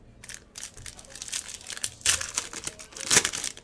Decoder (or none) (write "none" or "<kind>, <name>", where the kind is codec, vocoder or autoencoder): none